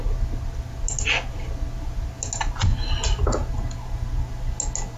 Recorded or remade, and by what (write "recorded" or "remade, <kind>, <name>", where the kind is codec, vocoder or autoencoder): recorded